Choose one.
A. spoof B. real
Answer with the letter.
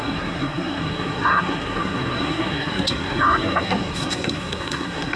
A